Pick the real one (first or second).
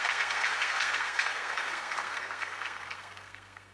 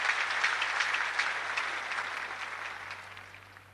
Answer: second